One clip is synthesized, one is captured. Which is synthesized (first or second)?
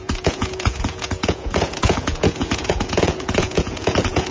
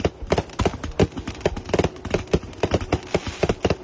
first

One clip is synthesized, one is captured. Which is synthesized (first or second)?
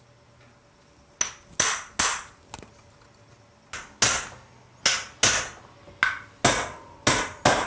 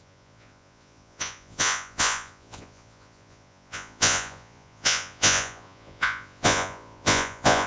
second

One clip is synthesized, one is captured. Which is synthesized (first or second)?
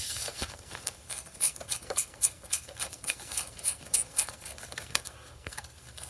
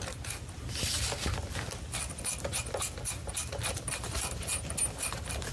first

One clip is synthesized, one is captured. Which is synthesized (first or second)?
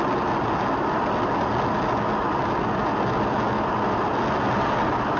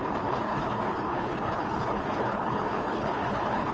second